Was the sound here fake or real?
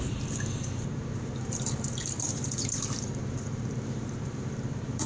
fake